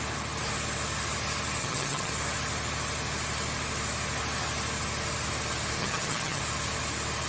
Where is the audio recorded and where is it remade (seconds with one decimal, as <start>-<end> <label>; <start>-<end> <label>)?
0.0-1.6 recorded; 1.6-2.1 remade; 2.1-5.8 recorded; 5.8-6.4 remade; 6.4-7.3 recorded